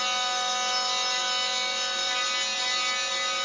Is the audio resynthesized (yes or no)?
no